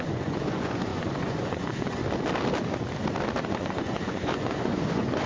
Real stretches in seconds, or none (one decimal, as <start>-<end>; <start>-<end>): 2.0-3.5